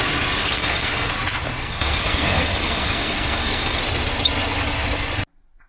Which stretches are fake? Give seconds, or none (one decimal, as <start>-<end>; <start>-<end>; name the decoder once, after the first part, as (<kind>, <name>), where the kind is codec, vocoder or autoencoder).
0.4-1.1 (codec, SNAC); 1.6-3.8